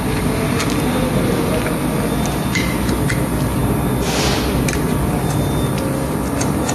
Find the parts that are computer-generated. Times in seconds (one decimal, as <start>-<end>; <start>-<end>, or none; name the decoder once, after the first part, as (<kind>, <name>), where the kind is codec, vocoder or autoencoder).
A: none